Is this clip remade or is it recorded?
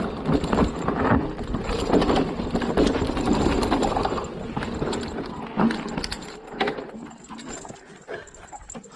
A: recorded